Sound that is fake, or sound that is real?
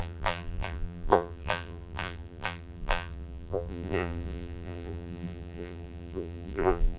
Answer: fake